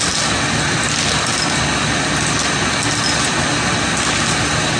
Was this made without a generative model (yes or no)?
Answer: yes